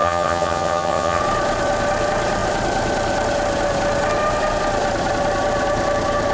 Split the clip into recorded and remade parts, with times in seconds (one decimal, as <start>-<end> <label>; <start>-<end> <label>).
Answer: 0.0-1.2 remade; 1.2-6.3 recorded